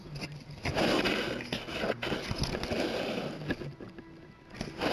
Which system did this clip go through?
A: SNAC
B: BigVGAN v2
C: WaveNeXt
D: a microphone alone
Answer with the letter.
D